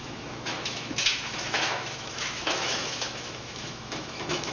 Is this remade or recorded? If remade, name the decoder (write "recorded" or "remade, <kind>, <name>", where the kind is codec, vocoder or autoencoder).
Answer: remade, autoencoder, DAC-VAE